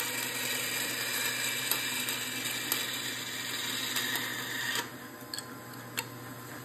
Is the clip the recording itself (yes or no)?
yes